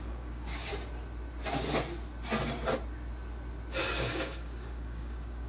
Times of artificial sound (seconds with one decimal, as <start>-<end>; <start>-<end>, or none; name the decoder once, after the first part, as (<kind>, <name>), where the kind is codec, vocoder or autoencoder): 0.0-0.7 (codec, DAC); 3.8-5.5